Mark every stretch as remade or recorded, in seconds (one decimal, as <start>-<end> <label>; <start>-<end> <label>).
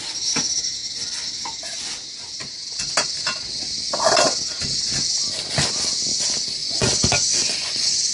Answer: 0.0-6.6 recorded; 6.6-8.1 remade